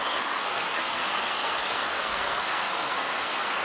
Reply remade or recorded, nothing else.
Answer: remade